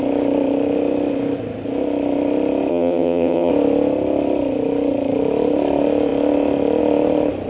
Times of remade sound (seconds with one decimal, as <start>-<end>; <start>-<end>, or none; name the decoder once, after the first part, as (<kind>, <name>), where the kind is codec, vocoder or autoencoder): 2.7-3.5 (vocoder, HiFi-GAN)